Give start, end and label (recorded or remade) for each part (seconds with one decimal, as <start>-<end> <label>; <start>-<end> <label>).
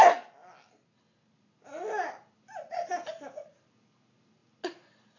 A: 0.0-5.2 recorded